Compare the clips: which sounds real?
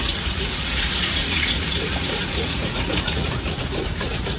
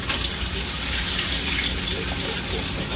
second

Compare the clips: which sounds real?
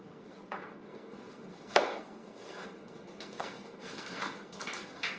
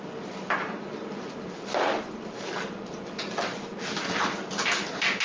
second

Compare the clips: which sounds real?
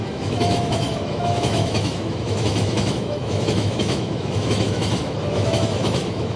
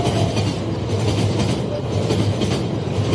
second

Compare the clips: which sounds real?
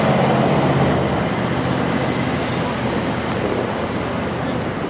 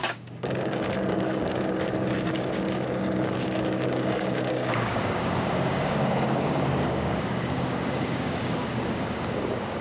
first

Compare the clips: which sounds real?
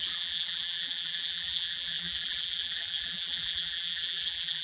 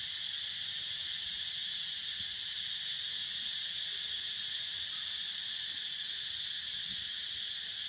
second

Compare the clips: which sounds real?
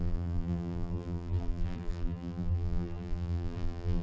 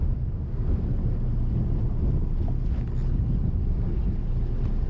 second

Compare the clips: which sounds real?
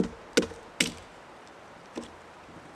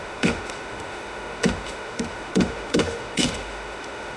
first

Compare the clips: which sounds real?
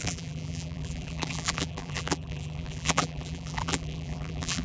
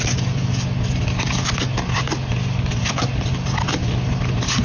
second